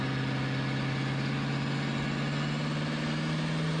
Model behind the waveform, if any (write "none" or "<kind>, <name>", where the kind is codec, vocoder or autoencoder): none